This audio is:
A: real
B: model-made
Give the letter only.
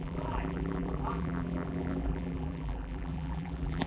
B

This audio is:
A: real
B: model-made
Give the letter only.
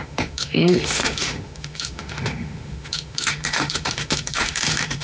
B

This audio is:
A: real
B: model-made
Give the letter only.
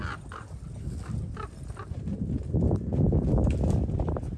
A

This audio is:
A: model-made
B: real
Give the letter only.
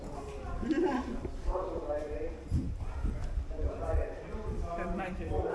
A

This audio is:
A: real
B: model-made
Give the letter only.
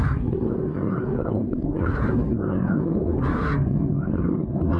B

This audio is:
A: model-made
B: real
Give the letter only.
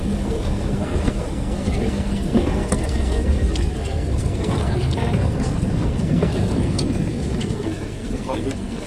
A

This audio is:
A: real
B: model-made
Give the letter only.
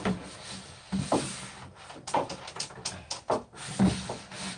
A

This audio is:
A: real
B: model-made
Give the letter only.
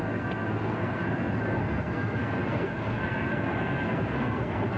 B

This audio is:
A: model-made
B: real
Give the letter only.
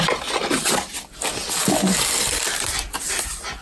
B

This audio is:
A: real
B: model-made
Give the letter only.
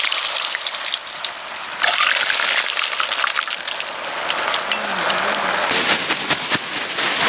A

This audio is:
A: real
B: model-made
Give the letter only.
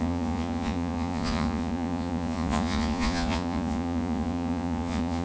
B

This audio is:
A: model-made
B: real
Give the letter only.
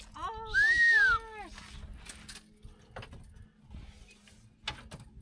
B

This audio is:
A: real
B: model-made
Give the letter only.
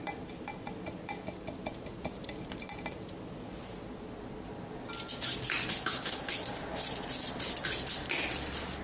A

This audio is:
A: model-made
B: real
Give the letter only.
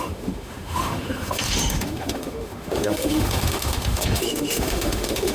A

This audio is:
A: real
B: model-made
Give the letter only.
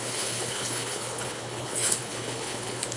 B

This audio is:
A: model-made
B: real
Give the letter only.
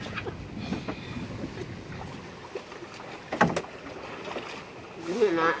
B